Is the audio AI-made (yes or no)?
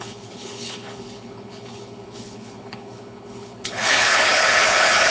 yes